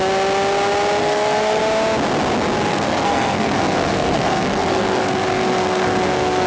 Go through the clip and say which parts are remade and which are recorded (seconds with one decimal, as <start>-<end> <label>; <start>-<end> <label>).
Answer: 0.0-1.0 recorded; 1.0-1.6 remade; 1.6-2.7 recorded; 2.7-6.5 remade